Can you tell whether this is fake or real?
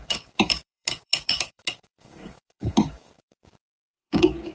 fake